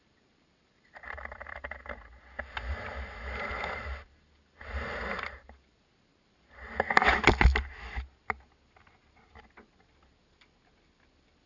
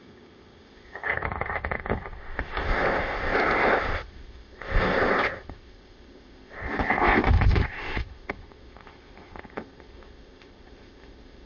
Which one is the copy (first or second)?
second